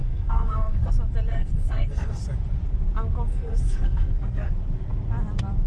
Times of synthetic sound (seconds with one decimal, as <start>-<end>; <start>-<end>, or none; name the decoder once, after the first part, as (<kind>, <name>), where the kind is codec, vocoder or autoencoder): 0.0-0.9 (codec, SNAC); 1.3-2.2; 3.3-4.5